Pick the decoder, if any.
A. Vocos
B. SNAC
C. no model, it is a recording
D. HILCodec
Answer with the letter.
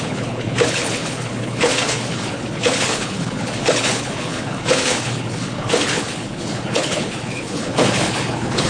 D